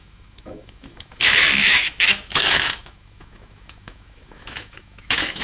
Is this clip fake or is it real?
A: fake